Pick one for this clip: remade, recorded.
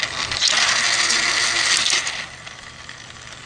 recorded